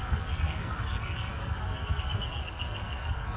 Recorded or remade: remade